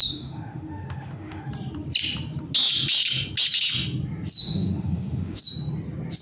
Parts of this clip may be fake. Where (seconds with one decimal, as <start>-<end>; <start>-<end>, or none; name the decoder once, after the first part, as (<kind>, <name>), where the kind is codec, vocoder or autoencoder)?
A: 0.0-1.5 (autoencoder, DAC-VAE); 4.4-5.4